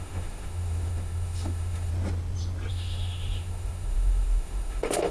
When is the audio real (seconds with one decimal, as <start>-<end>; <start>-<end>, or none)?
1.9-2.7